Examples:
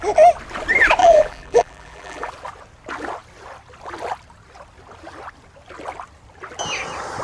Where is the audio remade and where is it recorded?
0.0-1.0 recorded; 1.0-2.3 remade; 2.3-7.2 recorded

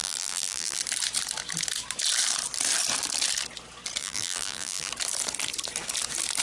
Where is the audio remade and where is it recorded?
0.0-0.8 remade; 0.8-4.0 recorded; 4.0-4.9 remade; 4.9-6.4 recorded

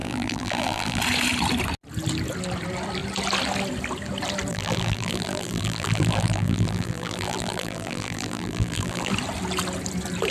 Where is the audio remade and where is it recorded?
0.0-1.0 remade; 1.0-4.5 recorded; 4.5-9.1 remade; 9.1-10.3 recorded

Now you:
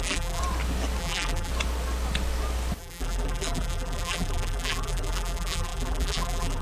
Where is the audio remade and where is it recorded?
0.0-0.4 remade; 0.4-1.0 recorded; 1.0-1.5 remade; 1.5-2.8 recorded; 2.8-6.6 remade

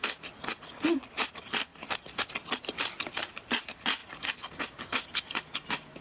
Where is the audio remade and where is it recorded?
0.0-1.1 recorded; 1.1-1.7 remade; 1.7-2.8 recorded; 2.8-6.0 remade